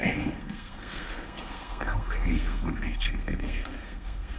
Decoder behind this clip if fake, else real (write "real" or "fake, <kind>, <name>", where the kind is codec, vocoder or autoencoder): fake, codec, SNAC